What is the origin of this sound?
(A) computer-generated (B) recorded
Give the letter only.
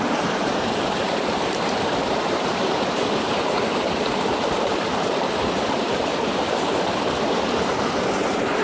A